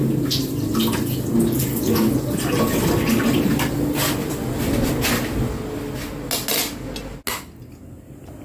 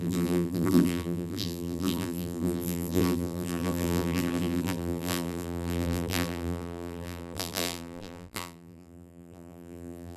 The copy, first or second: second